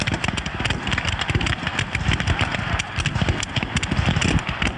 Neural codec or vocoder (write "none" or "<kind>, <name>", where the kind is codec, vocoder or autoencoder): none